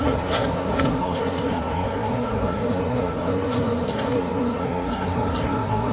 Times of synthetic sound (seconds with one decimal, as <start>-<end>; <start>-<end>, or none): 0.0-5.9